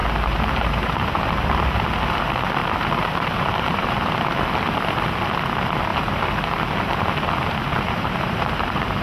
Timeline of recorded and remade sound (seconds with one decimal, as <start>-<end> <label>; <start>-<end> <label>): 0.0-1.6 remade; 1.6-2.6 recorded; 2.6-4.1 remade; 4.1-5.9 recorded; 5.9-9.0 remade